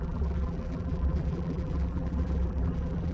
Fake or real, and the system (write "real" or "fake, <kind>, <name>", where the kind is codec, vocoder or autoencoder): fake, vocoder, BigVGAN v2